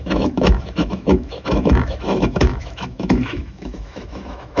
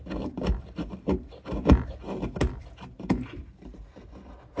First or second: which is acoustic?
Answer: second